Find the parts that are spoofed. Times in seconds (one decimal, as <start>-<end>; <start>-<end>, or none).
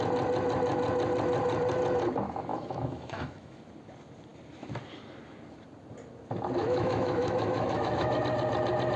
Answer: 2.5-3.6; 6.6-8.2